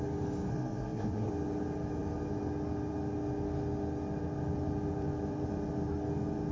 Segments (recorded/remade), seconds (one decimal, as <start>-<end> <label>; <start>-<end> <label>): 0.0-0.5 recorded; 0.5-1.3 remade; 1.3-6.5 recorded